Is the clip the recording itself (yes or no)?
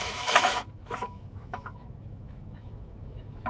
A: no